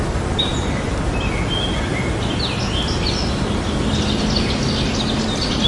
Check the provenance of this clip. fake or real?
real